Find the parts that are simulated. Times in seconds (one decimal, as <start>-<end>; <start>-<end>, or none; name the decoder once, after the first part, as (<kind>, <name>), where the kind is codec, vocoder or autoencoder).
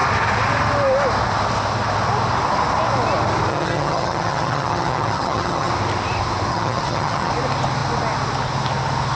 3.5-5.7 (vocoder, HiFi-GAN); 6.5-7.3